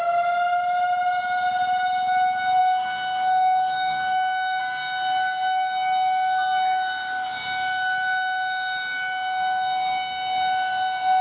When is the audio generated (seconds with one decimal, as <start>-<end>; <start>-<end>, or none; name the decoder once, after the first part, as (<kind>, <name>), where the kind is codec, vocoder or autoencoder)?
2.6-4.6 (autoencoder, DAC-VAE)